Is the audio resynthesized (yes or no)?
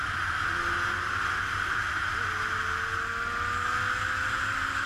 no